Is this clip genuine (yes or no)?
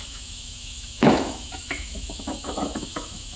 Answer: no